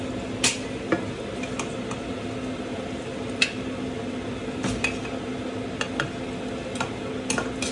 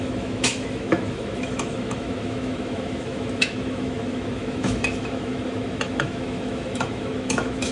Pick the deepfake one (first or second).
second